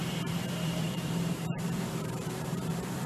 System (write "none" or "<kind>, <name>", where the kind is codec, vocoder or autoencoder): vocoder, BigVGAN v2